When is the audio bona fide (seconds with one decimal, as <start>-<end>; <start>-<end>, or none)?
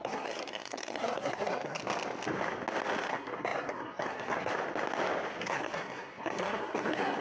1.8-3.1; 4.5-5.4